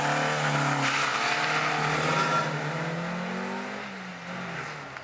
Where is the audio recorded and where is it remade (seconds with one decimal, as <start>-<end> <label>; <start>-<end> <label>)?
0.0-5.0 recorded